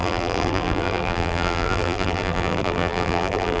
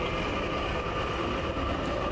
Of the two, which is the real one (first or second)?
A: second